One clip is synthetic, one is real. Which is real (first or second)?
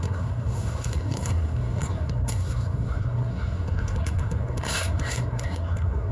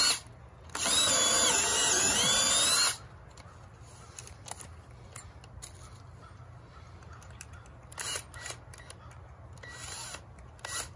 second